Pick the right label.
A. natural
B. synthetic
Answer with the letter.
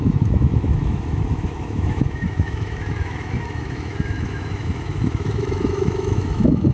B